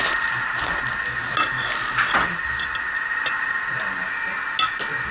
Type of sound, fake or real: real